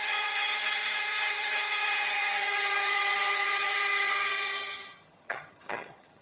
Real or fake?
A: fake